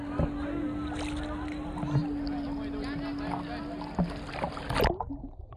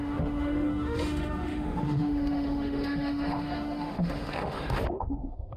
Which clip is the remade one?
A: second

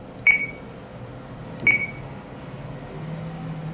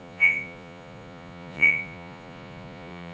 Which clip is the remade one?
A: second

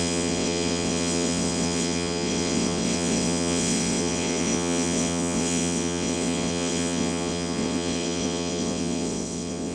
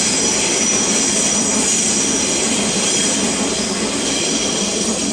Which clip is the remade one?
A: first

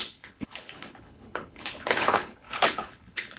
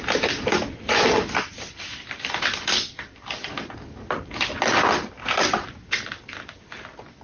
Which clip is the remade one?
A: first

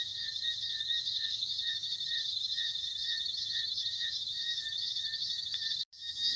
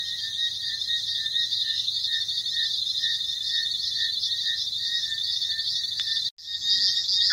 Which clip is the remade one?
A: first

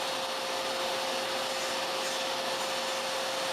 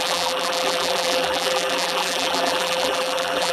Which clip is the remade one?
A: second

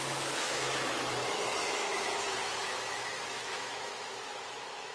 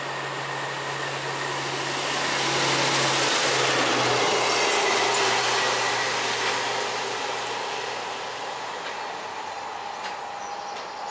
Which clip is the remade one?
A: first